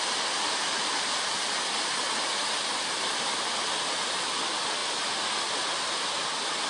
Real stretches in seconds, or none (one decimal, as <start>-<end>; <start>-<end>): 0.0-6.7